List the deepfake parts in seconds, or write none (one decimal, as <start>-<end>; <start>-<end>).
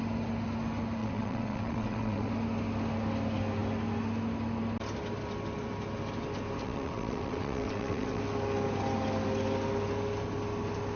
1.0-2.3; 6.6-8.2